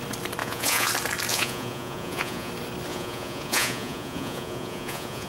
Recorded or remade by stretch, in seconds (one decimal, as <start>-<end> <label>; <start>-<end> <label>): 0.0-0.4 recorded; 0.4-0.9 remade; 0.9-1.3 recorded; 1.3-2.5 remade; 2.5-2.9 recorded; 2.9-5.3 remade